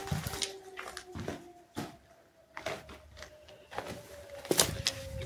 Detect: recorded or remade recorded